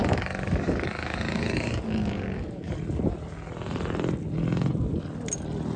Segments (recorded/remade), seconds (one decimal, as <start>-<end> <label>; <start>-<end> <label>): 0.0-2.7 remade; 2.7-5.8 recorded